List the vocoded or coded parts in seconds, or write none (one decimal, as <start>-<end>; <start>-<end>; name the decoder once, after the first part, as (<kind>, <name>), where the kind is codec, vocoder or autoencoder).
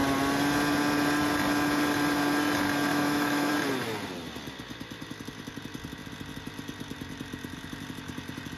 2.9-3.5 (autoencoder, DAC-VAE)